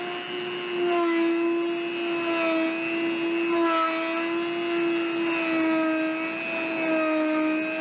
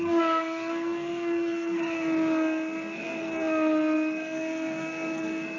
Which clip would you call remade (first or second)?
second